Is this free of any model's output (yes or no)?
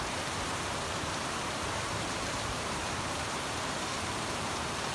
no